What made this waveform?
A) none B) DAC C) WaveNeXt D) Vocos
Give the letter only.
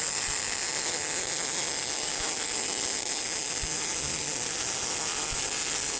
A